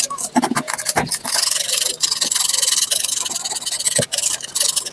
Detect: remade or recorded recorded